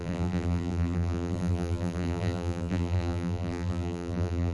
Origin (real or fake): fake